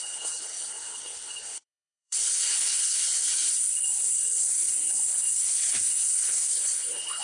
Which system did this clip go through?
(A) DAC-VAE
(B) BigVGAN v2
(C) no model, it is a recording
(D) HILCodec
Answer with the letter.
D